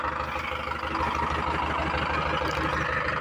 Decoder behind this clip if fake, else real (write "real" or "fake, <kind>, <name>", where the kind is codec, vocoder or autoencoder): real